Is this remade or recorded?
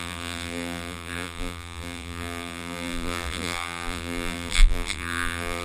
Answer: remade